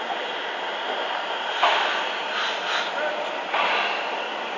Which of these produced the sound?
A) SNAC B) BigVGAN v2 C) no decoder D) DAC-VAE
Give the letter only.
C